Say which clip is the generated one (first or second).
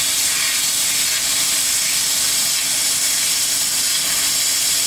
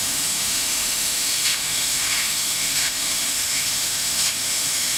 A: second